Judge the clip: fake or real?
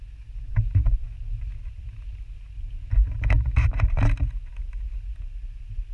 real